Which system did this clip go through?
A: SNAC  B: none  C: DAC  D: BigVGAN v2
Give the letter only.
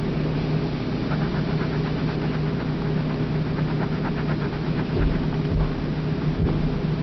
B